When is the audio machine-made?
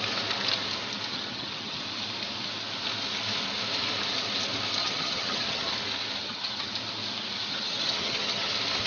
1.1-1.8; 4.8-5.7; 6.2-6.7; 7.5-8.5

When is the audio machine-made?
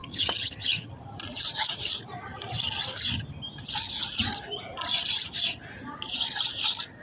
0.0-0.9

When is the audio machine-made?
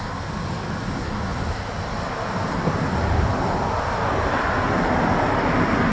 none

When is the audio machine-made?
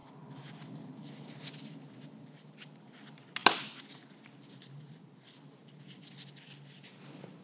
none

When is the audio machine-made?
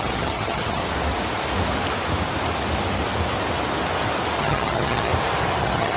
0.0-0.8; 4.4-5.1; 5.6-6.0